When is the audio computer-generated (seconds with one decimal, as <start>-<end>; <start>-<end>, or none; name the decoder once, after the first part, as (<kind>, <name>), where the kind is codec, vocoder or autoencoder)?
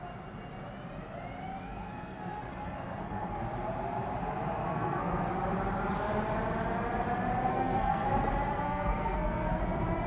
1.6-3.4 (codec, SNAC); 4.7-5.3; 7.5-8.1; 8.5-9.6